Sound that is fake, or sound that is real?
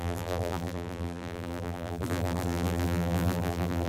fake